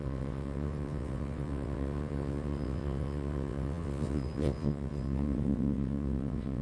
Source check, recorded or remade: remade